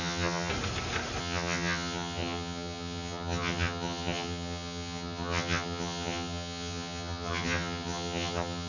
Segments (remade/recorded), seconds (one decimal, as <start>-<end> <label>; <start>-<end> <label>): 0.0-0.5 remade; 0.5-1.2 recorded; 1.2-8.7 remade